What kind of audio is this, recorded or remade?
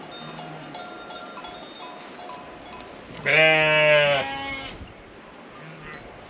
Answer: recorded